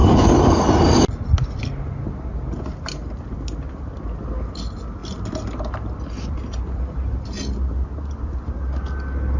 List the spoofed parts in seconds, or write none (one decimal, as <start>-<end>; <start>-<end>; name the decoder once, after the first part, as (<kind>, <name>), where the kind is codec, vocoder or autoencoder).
none